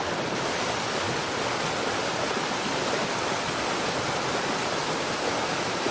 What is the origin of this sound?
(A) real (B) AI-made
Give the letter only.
A